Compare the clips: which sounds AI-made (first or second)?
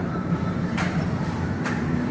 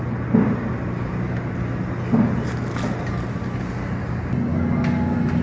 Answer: first